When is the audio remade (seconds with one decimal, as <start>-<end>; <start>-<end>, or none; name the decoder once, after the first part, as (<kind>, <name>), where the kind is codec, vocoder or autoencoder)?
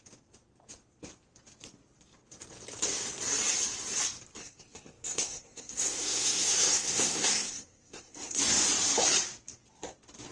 4.4-8.4 (codec, SNAC)